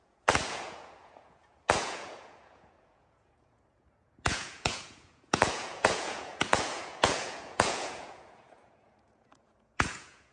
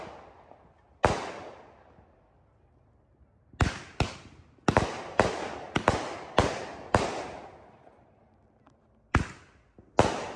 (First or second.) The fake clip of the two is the first